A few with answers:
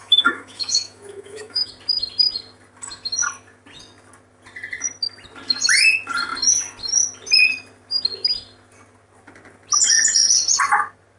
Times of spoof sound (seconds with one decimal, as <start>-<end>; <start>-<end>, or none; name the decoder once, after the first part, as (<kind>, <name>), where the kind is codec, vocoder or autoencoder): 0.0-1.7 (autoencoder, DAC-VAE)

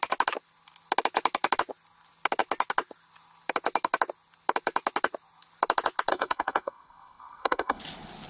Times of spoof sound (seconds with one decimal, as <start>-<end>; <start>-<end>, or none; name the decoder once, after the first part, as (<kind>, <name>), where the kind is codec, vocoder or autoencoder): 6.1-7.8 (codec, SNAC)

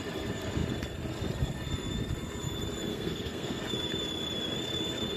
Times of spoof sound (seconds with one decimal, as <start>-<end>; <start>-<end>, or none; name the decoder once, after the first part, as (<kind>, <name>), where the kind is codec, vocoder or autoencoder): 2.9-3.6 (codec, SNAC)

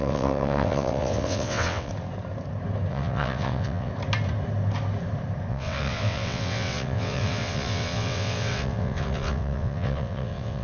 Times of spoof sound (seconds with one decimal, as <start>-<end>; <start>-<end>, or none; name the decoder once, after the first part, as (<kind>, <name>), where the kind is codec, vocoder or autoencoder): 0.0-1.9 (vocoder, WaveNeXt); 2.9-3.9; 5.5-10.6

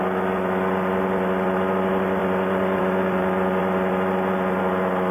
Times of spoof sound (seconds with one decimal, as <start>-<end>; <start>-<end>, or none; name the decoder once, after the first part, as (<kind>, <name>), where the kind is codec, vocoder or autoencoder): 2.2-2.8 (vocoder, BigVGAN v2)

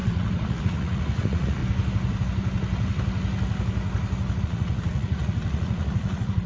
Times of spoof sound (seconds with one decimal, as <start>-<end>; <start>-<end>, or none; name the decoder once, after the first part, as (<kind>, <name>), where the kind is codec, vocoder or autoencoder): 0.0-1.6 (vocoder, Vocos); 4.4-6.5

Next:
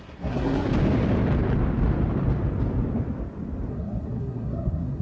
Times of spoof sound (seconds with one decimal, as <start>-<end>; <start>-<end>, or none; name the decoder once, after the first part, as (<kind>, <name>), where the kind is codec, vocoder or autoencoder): 0.0-0.7 (codec, SNAC); 3.7-5.0